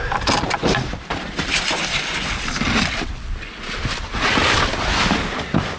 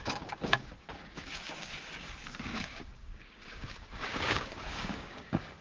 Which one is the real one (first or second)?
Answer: first